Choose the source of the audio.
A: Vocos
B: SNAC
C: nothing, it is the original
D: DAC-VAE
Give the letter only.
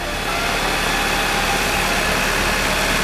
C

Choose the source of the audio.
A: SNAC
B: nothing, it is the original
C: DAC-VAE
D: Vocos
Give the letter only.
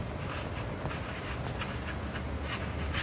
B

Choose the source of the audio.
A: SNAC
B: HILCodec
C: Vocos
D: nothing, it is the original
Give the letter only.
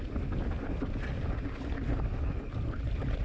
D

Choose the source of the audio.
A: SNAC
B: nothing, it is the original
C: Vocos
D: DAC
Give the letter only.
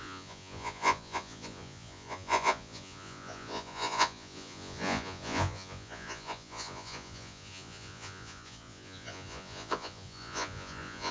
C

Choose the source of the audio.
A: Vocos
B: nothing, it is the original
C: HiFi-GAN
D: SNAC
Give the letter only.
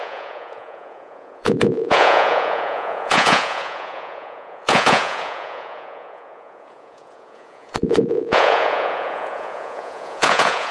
A